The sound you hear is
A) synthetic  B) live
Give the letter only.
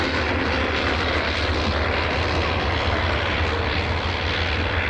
B